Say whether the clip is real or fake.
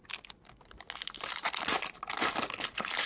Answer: real